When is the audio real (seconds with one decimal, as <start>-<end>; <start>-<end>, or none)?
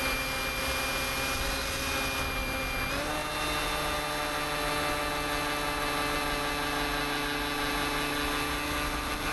0.0-9.3